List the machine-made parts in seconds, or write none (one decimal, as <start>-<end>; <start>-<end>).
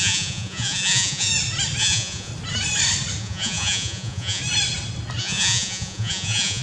0.0-1.3; 1.8-2.3; 3.2-4.4; 5.2-6.6